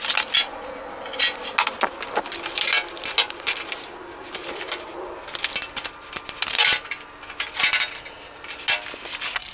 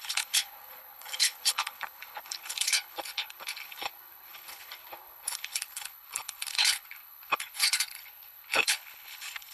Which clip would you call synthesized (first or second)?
second